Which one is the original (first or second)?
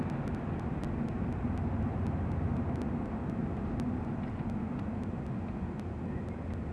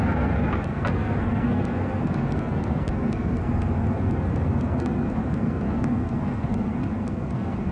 first